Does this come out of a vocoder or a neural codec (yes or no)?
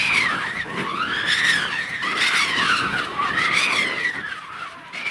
no